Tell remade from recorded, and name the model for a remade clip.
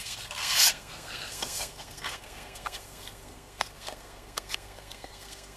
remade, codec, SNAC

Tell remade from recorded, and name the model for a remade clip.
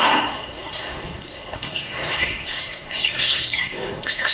remade, codec, SNAC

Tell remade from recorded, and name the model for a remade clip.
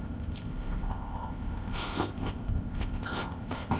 remade, codec, ZipCodec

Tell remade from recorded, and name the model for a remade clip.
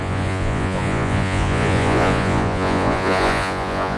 remade, vocoder, Vocos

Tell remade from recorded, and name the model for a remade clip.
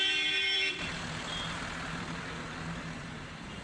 remade, vocoder, BigVGAN v2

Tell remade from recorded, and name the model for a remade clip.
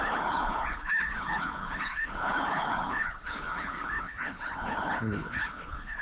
remade, codec, HILCodec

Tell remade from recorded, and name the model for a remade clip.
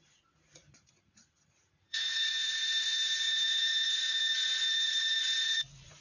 remade, vocoder, Vocos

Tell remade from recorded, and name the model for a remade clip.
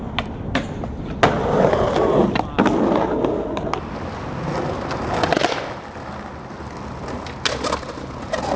recorded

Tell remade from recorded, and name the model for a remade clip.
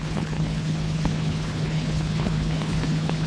remade, codec, HILCodec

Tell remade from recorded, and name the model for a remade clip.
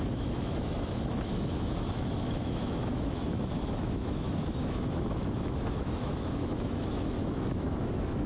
remade, autoencoder, DAC-VAE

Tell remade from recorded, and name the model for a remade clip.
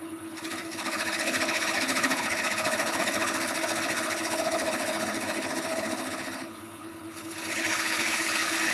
remade, codec, HILCodec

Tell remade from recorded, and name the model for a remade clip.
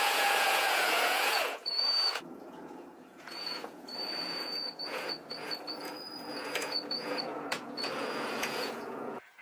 remade, vocoder, Vocos